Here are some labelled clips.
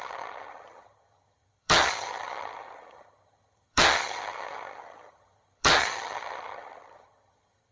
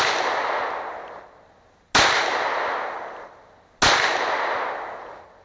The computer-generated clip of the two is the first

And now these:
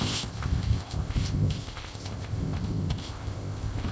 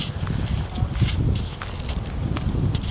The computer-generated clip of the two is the first